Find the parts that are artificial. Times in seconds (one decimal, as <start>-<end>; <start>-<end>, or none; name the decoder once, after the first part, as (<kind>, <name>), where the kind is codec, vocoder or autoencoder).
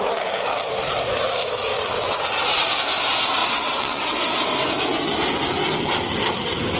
1.7-2.2 (vocoder, WaveNeXt); 3.4-4.0